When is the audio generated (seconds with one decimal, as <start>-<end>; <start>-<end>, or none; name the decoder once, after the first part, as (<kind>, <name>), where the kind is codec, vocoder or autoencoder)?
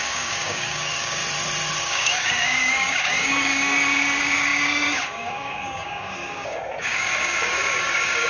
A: 0.0-1.2 (codec, DAC); 1.8-8.3